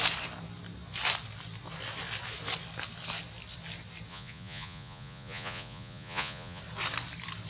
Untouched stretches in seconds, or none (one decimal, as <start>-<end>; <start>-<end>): 0.0-4.1; 6.6-7.5